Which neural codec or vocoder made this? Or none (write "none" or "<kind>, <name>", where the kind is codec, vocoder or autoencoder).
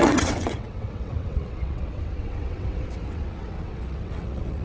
vocoder, WaveNeXt